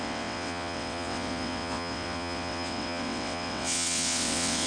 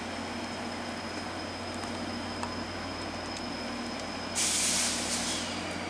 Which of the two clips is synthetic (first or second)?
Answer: first